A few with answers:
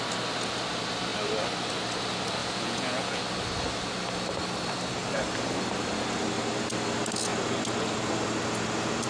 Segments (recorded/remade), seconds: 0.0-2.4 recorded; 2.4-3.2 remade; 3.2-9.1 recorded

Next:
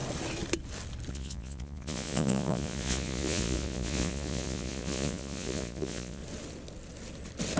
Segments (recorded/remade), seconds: 0.0-1.1 recorded; 1.1-6.2 remade; 6.2-7.6 recorded

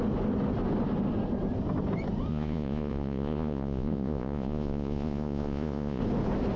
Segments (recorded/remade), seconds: 0.0-2.3 recorded; 2.3-6.0 remade; 6.0-6.6 recorded

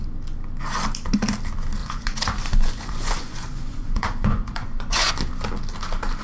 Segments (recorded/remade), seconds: 0.0-1.8 recorded; 1.8-5.1 remade; 5.1-6.2 recorded

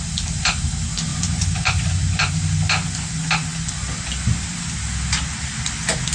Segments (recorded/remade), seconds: 0.0-1.1 recorded; 1.1-2.3 remade; 2.3-6.1 recorded